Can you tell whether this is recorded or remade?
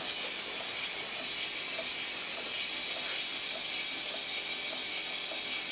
recorded